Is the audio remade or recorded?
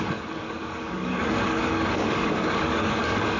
remade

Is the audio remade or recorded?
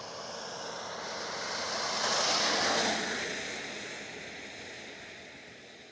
recorded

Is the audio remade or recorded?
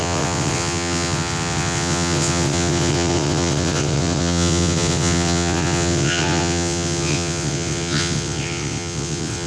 remade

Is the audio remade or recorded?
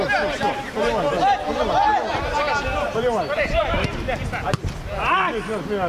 recorded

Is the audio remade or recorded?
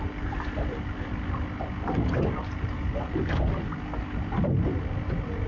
recorded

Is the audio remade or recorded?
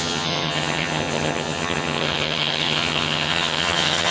remade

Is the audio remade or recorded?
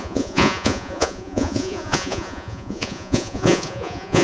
remade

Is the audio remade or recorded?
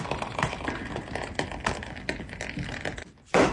remade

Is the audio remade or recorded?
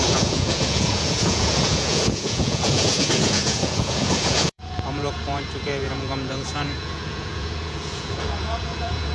remade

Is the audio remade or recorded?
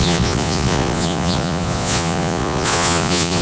remade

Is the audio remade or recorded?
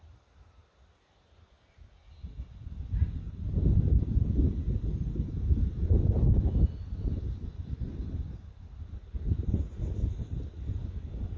recorded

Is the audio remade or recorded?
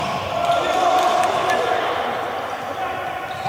recorded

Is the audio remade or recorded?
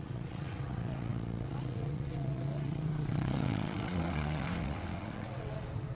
remade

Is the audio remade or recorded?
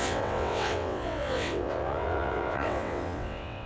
remade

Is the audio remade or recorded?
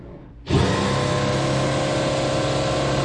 recorded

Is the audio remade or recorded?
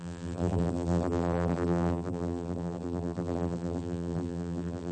remade